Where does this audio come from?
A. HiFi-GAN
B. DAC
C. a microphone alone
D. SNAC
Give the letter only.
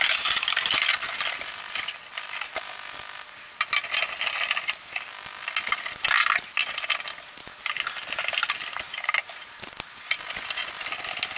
C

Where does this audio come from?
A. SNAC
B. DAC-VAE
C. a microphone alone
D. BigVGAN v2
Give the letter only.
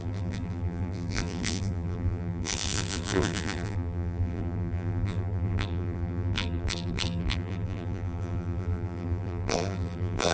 D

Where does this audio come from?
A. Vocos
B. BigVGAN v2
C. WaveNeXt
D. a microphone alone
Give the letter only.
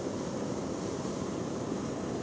D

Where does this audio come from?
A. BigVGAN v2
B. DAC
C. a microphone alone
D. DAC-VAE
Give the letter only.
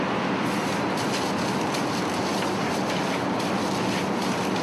C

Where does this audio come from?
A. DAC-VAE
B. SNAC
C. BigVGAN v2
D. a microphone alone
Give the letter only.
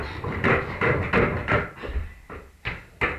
D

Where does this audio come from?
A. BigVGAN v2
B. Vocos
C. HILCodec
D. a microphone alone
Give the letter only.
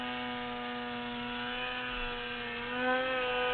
D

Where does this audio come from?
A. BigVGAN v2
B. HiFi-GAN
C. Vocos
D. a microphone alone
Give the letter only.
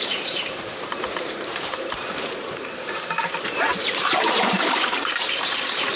A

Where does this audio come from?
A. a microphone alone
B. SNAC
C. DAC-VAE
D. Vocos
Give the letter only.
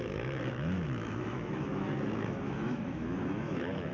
C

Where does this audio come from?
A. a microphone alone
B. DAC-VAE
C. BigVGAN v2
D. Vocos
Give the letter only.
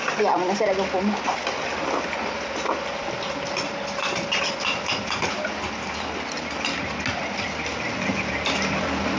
A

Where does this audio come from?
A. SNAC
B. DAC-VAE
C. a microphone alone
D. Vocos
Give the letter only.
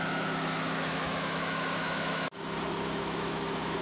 B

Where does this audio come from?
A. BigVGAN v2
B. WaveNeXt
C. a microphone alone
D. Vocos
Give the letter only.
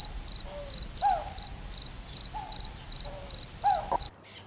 C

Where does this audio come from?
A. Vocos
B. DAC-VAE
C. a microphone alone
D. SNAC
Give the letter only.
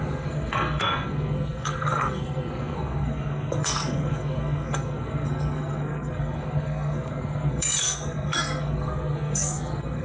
D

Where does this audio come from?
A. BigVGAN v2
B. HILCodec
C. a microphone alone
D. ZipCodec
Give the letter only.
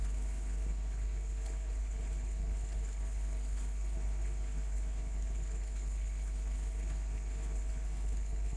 B